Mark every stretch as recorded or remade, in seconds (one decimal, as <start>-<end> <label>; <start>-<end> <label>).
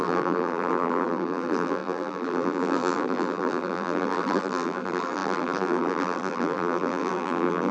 0.0-7.7 remade